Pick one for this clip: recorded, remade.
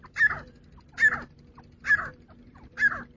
recorded